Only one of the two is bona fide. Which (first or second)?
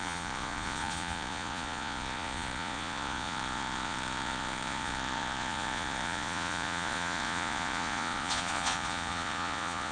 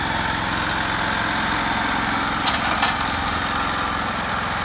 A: second